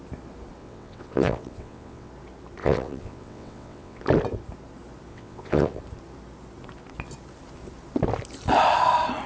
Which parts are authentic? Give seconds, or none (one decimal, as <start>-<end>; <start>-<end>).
0.0-0.6; 2.1-2.6; 4.0-5.1; 5.8-9.3